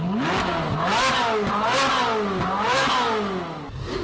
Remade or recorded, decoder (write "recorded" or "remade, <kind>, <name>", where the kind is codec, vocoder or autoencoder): recorded